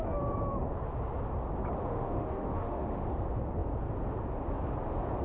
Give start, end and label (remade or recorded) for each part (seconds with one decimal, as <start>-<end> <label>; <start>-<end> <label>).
0.0-1.8 recorded; 1.8-3.0 remade; 3.0-5.2 recorded

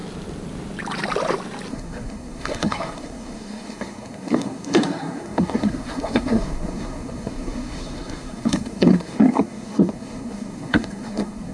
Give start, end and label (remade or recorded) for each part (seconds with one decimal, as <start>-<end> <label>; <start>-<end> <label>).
0.0-1.7 recorded; 1.7-11.5 remade